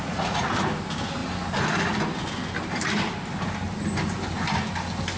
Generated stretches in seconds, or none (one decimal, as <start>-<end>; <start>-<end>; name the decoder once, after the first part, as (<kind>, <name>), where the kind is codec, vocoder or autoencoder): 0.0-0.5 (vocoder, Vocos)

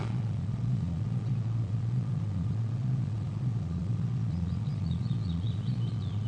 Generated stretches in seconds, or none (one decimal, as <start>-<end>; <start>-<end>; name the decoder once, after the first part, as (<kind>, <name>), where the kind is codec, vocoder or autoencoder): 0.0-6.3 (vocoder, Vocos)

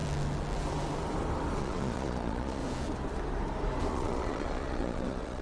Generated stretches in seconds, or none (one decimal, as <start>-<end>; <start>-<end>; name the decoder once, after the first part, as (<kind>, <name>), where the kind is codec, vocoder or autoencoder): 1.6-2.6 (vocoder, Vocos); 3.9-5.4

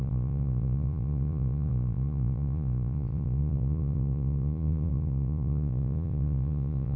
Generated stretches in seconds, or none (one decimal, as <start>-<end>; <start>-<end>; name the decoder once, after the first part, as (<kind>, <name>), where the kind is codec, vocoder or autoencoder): 0.0-7.0 (vocoder, Vocos)